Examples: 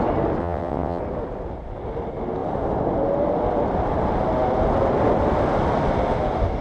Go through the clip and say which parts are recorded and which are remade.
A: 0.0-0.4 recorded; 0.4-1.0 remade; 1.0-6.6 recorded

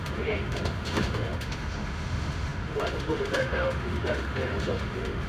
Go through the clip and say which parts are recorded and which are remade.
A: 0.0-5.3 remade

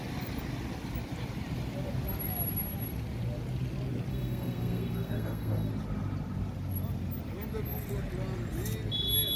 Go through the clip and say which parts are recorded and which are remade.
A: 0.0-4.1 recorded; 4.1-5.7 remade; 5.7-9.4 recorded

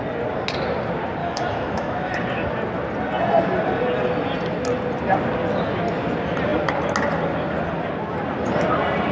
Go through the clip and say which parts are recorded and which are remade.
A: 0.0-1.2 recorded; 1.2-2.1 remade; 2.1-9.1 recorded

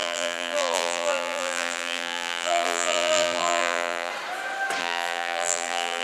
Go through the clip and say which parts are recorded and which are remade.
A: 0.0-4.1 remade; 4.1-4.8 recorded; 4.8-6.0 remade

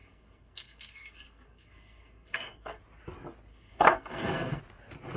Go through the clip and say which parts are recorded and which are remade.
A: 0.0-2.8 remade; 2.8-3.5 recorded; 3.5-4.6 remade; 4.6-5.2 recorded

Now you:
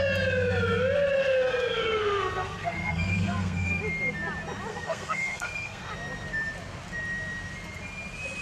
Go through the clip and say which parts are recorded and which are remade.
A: 0.0-1.2 recorded; 1.2-3.8 remade; 3.8-4.7 recorded; 4.7-5.9 remade; 5.9-8.4 recorded

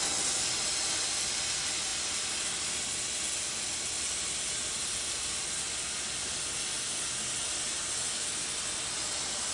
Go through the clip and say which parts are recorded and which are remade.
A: 0.0-9.5 recorded